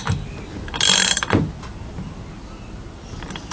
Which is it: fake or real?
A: real